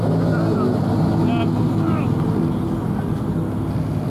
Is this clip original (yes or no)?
yes